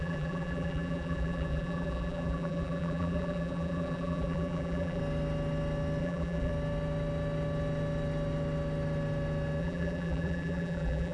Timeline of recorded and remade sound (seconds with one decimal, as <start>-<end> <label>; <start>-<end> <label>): 0.0-5.0 remade; 5.0-6.0 recorded; 6.0-6.5 remade; 6.5-9.6 recorded; 9.6-11.1 remade